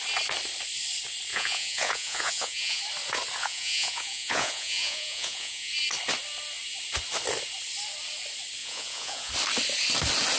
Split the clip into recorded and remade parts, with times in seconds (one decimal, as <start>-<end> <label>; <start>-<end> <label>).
0.0-1.3 recorded; 1.3-2.8 remade; 2.8-3.4 recorded; 3.4-5.7 remade; 5.7-8.6 recorded; 8.6-9.3 remade; 9.3-10.4 recorded